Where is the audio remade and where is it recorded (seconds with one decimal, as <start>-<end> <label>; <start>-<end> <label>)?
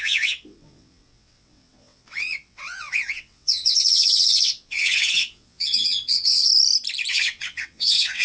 0.0-6.5 remade; 6.5-7.1 recorded; 7.1-8.2 remade